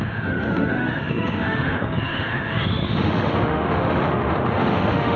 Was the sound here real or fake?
fake